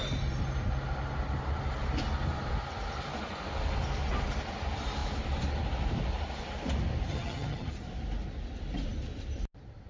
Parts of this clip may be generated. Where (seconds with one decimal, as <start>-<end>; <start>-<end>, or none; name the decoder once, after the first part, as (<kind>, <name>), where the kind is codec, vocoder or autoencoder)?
7.1-7.7 (vocoder, HiFi-GAN)